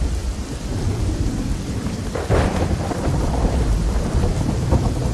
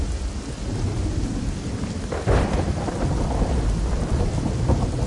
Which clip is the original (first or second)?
second